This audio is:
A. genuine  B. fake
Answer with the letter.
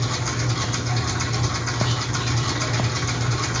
A